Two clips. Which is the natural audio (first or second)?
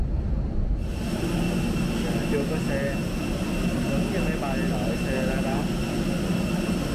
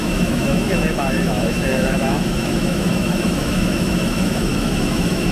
first